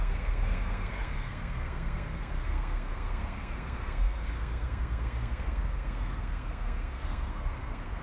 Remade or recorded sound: remade